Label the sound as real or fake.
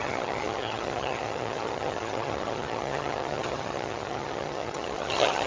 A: fake